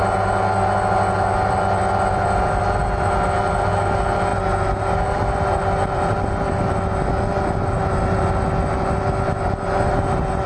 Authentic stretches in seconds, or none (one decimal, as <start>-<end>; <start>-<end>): 0.0-10.5